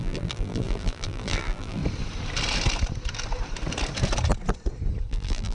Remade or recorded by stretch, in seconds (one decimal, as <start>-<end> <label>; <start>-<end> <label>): 0.0-1.8 remade; 1.8-5.1 recorded; 5.1-5.5 remade